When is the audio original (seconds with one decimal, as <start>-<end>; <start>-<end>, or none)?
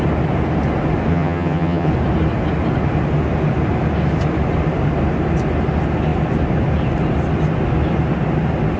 0.0-1.1; 1.9-8.8